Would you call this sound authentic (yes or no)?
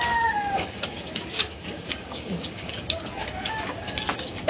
no